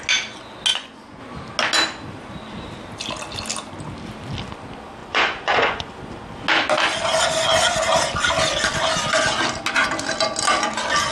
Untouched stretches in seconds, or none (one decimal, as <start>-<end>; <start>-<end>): 0.0-0.7; 1.2-5.0; 5.9-11.1